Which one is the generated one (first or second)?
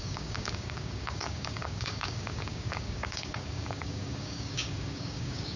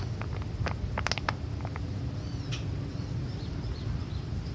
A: first